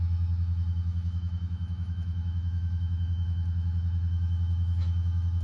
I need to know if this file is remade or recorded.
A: remade